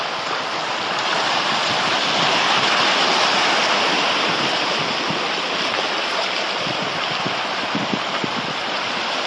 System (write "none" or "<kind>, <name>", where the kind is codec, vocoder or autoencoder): none